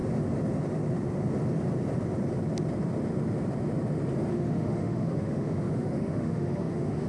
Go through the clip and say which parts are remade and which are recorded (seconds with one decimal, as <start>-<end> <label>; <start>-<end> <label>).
0.0-4.3 recorded; 4.3-7.1 remade